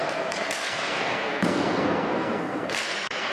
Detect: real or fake fake